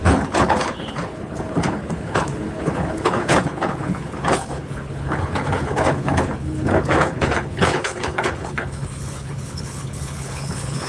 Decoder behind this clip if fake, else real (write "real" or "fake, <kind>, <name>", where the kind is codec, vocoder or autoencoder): fake, codec, HILCodec